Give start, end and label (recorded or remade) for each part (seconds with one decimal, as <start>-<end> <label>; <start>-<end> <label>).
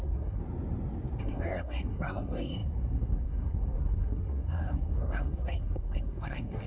0.0-0.4 remade; 0.4-1.2 recorded; 1.2-6.7 remade